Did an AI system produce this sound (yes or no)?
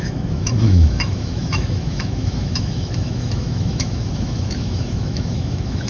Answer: yes